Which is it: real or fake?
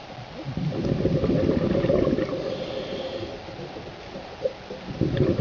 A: real